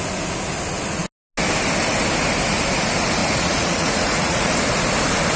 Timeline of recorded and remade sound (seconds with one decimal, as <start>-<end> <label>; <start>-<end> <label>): 0.0-3.2 recorded; 3.2-4.5 remade; 4.5-5.4 recorded